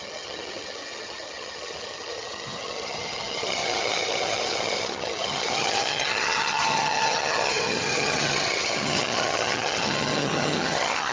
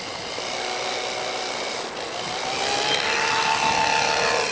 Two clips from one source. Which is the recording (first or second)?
second